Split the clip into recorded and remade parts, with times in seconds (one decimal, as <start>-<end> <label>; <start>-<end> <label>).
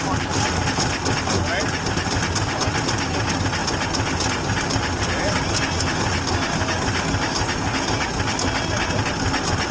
0.0-9.7 recorded